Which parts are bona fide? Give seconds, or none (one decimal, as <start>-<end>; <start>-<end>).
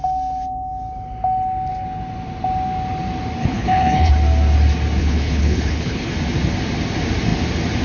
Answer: 0.0-3.4; 4.1-5.0; 6.1-7.8